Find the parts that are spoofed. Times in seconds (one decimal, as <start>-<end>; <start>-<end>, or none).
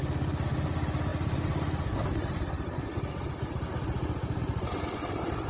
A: none